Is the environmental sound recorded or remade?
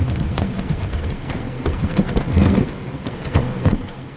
remade